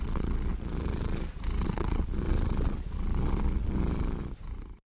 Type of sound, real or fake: fake